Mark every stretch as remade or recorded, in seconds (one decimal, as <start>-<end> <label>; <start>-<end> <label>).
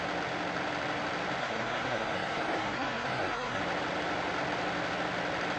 0.0-1.4 recorded; 1.4-3.6 remade; 3.6-5.6 recorded